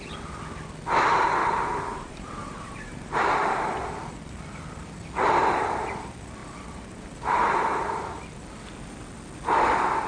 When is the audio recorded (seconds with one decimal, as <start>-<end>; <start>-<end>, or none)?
0.0-1.4; 3.6-6.4; 8.4-10.1

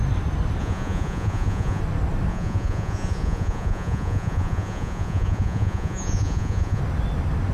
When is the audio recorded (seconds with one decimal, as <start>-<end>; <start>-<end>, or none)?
0.0-0.6; 1.8-2.3; 6.8-7.5

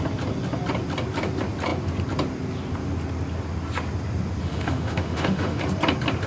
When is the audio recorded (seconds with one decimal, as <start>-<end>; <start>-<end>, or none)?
0.0-4.4; 5.6-6.3

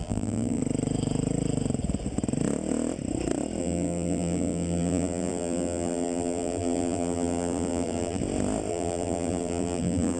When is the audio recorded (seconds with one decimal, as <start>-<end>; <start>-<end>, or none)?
0.6-3.6; 8.2-8.7

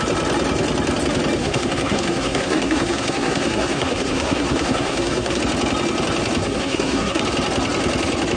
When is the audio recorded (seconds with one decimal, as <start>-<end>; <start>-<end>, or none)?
0.0-1.4; 5.4-6.4; 7.2-8.4

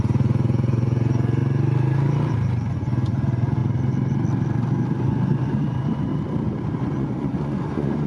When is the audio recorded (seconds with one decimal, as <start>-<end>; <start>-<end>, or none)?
1.4-2.7; 3.6-5.0; 6.1-6.8